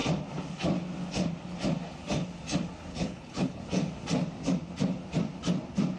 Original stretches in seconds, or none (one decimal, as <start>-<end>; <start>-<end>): 0.0-2.9; 3.6-6.0